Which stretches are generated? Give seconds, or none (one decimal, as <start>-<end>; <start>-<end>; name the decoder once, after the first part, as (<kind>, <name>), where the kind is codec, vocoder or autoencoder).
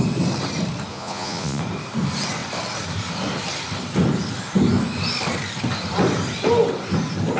0.9-1.6 (vocoder, Vocos)